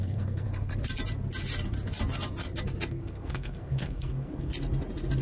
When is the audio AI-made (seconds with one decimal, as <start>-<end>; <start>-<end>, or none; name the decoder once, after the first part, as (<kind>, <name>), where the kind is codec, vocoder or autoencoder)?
0.0-0.7 (codec, SNAC); 2.9-4.5